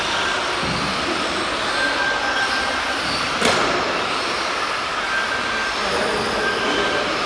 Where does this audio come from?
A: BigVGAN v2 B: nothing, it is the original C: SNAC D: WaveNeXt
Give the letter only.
B